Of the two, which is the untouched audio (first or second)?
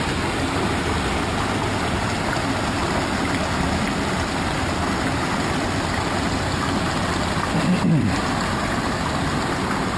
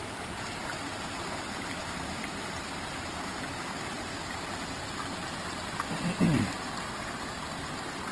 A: first